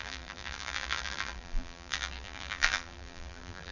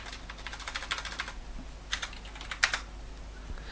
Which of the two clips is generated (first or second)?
first